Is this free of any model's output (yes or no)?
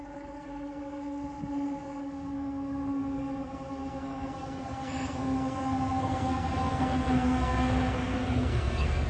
no